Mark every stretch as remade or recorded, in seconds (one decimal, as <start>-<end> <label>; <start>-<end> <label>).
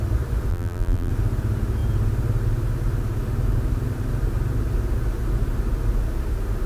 0.0-0.5 recorded; 0.5-1.1 remade; 1.1-6.7 recorded